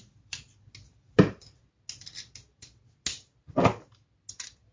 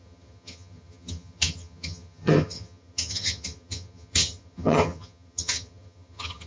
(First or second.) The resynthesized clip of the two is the second